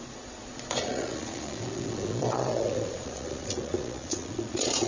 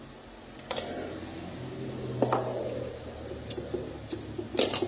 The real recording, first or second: second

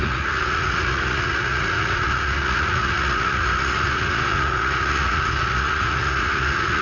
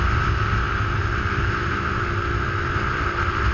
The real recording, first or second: second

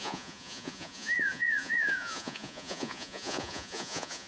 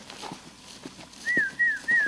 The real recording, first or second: second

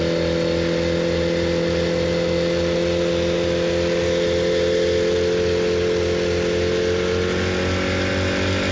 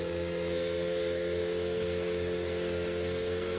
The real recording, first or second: first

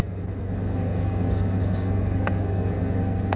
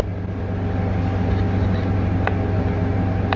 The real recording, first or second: second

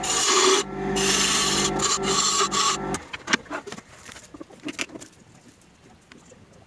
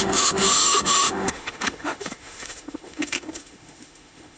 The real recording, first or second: first